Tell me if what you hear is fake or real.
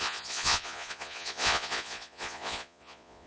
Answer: fake